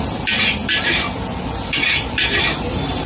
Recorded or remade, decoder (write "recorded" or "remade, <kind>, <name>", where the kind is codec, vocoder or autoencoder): recorded